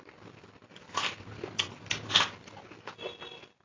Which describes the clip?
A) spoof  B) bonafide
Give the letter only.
B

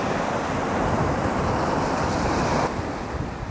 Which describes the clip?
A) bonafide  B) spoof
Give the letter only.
B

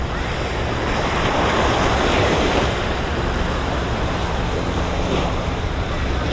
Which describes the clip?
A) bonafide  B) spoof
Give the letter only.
B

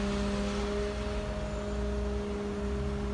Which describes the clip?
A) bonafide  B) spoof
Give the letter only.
A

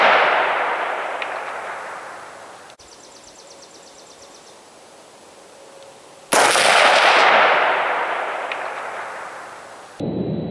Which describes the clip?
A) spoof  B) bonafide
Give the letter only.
B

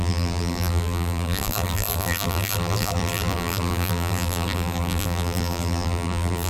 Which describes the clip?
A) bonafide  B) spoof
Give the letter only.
B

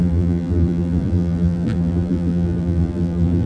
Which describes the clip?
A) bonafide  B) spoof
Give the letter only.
B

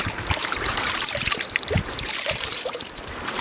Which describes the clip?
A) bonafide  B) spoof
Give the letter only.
B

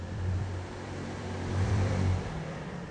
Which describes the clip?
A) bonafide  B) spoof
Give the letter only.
B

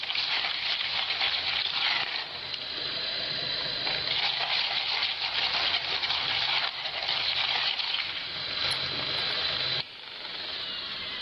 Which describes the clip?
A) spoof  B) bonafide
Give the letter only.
A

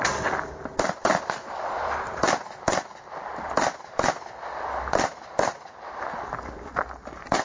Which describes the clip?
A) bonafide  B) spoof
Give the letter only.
B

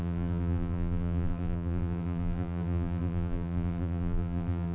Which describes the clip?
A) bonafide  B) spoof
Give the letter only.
B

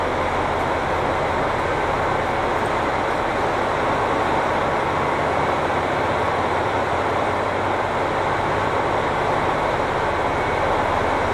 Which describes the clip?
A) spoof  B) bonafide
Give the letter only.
B